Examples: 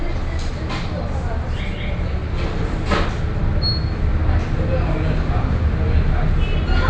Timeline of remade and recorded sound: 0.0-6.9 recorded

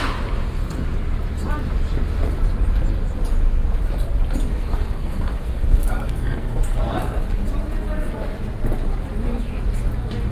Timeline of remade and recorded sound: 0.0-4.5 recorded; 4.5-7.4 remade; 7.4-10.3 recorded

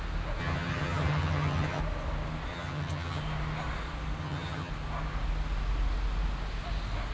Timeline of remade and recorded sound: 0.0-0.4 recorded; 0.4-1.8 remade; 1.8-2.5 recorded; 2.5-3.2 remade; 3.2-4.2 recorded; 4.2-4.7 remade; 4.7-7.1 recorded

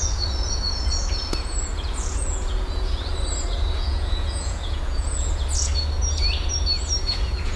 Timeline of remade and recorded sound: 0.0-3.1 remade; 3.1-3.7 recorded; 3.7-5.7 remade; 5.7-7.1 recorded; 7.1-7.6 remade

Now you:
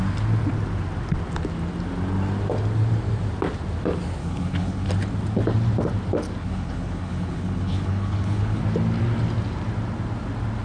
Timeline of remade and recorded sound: 0.0-4.2 recorded; 4.2-4.9 remade; 4.9-6.4 recorded; 6.4-8.6 remade; 8.6-10.6 recorded

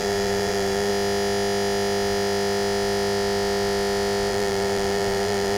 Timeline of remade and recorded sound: 0.0-0.9 remade; 0.9-4.3 recorded; 4.3-5.6 remade